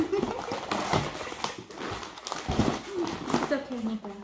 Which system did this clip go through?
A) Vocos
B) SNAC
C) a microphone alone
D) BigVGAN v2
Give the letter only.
C